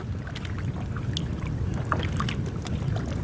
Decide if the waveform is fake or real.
real